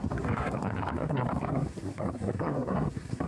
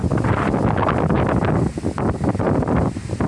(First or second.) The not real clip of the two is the first